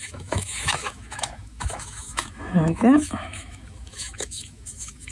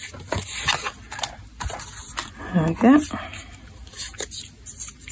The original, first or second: second